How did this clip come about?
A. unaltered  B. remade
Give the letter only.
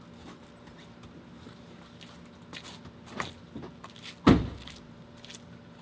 A